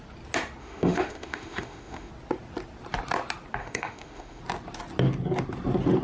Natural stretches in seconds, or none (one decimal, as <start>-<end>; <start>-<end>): 0.0-0.6; 2.1-3.6; 4.4-6.0